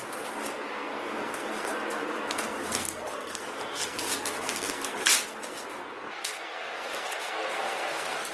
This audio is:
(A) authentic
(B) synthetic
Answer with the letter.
B